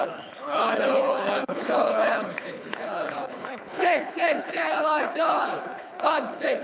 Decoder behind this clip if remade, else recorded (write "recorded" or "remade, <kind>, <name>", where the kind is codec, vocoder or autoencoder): remade, codec, HILCodec